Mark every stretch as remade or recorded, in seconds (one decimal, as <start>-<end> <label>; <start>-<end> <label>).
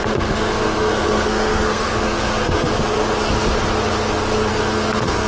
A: 0.0-2.7 remade; 2.7-4.5 recorded; 4.5-5.3 remade